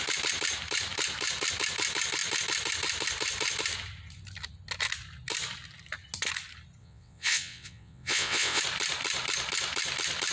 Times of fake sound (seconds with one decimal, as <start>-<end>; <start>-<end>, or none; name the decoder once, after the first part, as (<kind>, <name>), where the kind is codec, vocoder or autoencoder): 6.8-8.6 (vocoder, WaveNeXt)